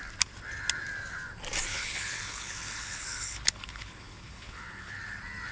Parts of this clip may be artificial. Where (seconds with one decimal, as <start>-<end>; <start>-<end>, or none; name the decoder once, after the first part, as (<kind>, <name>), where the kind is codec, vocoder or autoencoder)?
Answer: 1.7-5.0 (codec, HILCodec)